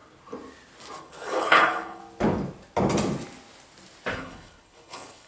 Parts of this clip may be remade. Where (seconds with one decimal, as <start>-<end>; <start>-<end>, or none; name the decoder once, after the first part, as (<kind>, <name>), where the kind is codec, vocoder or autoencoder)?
1.0-2.0 (codec, HILCodec); 4.1-5.3